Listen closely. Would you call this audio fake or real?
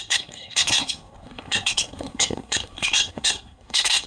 fake